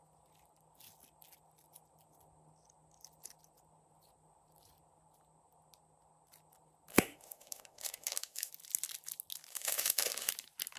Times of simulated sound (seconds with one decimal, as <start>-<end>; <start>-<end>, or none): 6.9-8.5; 9.5-10.3